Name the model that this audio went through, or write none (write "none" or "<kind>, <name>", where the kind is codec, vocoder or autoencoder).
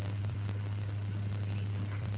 vocoder, BigVGAN v2